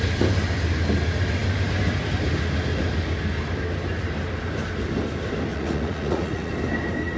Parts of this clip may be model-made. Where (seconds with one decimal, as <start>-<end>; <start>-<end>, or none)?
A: 5.5-6.5